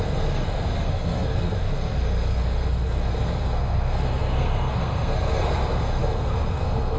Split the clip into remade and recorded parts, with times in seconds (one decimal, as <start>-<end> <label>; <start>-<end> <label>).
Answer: 0.0-7.0 remade